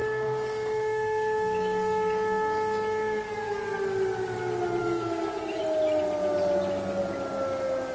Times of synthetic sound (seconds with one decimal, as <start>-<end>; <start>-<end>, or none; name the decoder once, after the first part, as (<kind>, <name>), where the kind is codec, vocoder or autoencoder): 0.0-3.7 (codec, DAC); 4.8-5.6